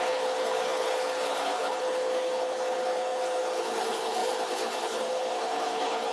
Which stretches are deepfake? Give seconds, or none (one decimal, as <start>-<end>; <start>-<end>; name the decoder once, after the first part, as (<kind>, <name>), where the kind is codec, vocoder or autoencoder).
0.0-6.1 (codec, HILCodec)